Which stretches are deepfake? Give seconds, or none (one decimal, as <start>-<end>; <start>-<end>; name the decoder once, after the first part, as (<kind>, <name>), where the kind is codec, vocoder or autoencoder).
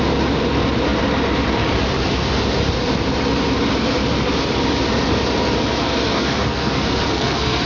5.8-7.7 (codec, SNAC)